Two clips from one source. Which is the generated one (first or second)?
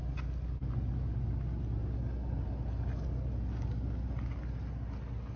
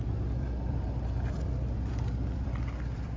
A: second